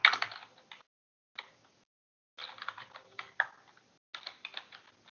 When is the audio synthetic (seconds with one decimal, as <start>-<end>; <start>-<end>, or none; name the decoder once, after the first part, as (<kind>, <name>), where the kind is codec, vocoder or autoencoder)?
none